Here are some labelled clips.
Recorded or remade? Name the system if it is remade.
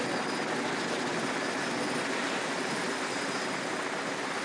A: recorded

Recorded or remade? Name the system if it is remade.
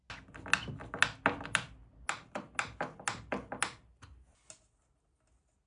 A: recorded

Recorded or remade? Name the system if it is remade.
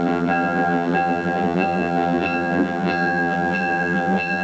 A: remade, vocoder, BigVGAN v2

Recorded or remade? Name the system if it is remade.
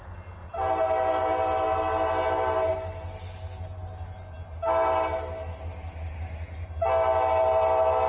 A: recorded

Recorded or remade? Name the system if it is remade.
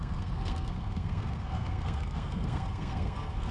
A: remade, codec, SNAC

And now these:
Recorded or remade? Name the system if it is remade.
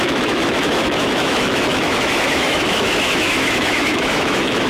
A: remade, autoencoder, DAC-VAE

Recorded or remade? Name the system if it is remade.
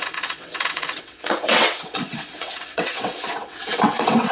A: remade, vocoder, WaveNeXt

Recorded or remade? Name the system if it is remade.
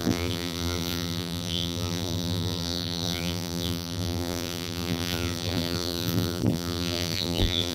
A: remade, vocoder, BigVGAN v2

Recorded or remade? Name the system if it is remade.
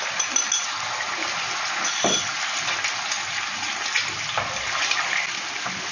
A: recorded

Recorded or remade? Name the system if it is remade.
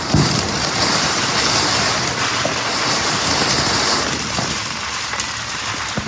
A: remade, vocoder, BigVGAN v2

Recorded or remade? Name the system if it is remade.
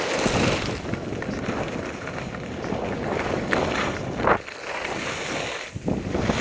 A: recorded